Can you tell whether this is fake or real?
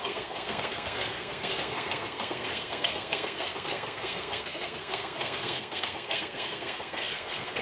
fake